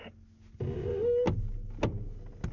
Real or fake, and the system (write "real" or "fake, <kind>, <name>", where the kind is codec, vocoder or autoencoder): real